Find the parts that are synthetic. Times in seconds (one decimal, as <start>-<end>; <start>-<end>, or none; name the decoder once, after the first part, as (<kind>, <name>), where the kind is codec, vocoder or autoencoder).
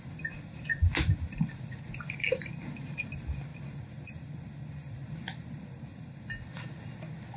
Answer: none